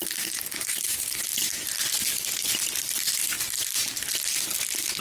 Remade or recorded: recorded